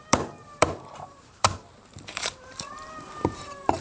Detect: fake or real fake